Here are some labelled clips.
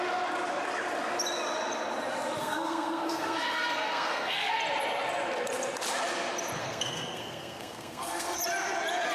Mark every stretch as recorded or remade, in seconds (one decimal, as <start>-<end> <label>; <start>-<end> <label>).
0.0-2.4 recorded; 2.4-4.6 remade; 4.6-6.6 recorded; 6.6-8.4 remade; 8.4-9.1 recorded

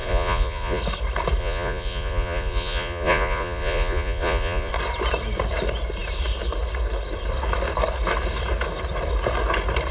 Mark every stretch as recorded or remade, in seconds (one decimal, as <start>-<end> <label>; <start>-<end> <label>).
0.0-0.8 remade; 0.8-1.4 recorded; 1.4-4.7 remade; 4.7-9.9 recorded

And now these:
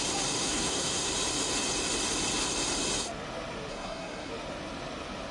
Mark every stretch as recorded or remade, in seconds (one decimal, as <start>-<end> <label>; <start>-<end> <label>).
0.0-0.4 recorded; 0.4-1.1 remade; 1.1-3.7 recorded; 3.7-4.3 remade; 4.3-5.3 recorded

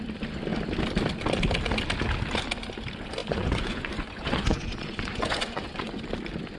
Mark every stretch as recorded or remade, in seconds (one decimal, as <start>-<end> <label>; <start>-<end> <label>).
0.0-3.2 recorded; 3.2-6.0 remade; 6.0-6.6 recorded

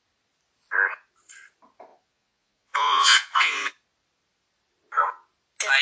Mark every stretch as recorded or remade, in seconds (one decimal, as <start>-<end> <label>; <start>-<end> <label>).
0.0-1.9 recorded; 1.9-3.7 remade; 3.7-5.8 recorded

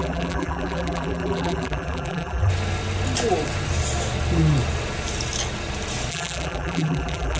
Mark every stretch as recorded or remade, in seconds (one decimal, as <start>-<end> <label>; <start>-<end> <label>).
0.0-2.5 remade; 2.5-6.1 recorded; 6.1-7.4 remade

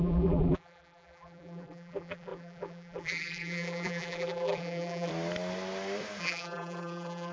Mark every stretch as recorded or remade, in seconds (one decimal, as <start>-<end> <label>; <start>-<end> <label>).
0.0-5.1 remade; 5.1-6.2 recorded; 6.2-7.3 remade